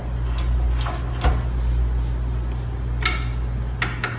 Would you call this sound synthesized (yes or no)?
no